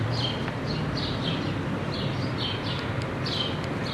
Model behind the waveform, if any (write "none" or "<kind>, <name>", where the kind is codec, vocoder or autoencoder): none